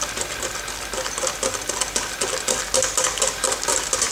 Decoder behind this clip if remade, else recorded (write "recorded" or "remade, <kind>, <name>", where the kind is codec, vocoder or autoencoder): recorded